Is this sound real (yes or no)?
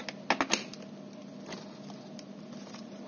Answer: yes